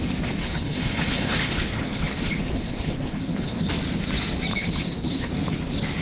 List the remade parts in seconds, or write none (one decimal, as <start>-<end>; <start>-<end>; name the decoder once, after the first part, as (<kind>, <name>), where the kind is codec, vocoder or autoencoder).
0.4-3.7 (codec, HILCodec); 4.5-5.3